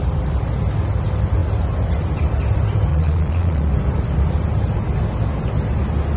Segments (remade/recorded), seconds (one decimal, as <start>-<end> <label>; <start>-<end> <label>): 0.0-2.9 recorded; 2.9-3.7 remade; 3.7-6.2 recorded